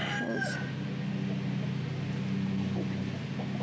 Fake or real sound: real